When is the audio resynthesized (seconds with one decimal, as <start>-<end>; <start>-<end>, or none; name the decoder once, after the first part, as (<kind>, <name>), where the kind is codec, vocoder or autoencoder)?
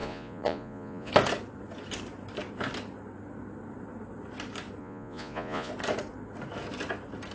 0.0-1.1 (vocoder, Vocos); 4.8-5.7